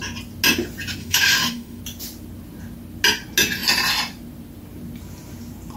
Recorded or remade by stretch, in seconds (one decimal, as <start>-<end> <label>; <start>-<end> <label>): 0.0-1.0 recorded; 1.0-1.8 remade; 1.8-5.8 recorded